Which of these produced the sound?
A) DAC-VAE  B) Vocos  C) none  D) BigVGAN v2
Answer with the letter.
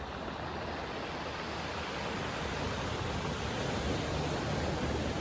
C